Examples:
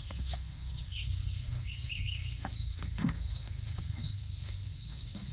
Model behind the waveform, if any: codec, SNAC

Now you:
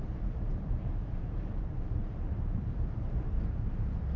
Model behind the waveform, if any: vocoder, BigVGAN v2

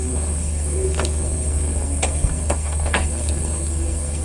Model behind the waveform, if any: codec, SNAC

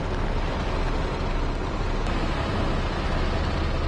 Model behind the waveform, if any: none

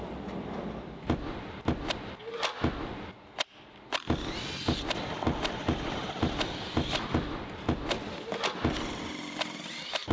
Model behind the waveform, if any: none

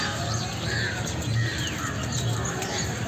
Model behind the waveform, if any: none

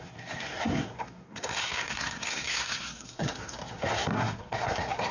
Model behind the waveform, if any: codec, SNAC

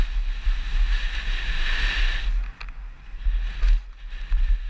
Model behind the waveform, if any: none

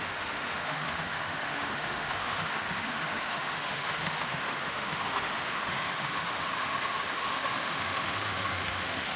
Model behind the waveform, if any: autoencoder, DAC-VAE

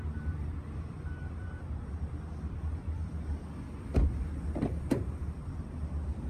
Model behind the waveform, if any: vocoder, BigVGAN v2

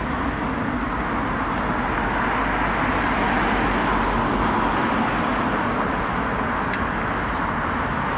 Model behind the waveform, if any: none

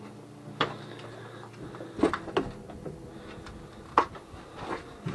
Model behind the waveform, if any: none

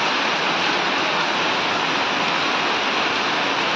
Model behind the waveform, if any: none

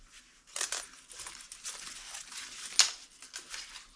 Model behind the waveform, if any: none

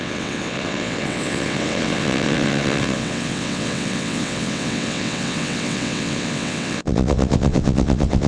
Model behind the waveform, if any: vocoder, WaveNeXt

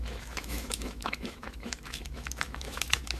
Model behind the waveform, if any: autoencoder, DAC-VAE